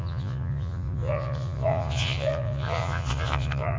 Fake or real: fake